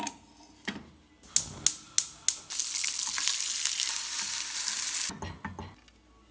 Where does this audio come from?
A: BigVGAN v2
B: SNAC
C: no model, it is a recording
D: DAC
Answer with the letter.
C